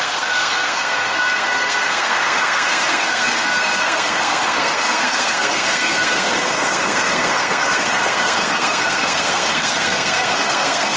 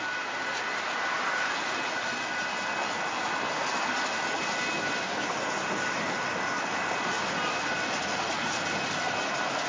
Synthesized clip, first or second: first